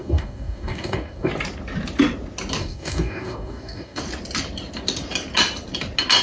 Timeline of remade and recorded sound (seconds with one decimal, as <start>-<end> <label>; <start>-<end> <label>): 0.0-1.3 remade; 1.3-2.6 recorded; 2.6-4.0 remade; 4.0-6.2 recorded